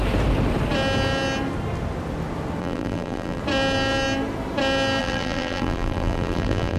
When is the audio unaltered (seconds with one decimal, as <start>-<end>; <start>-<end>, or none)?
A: 0.0-2.6; 3.4-5.0